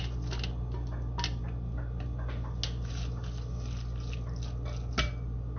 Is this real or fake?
real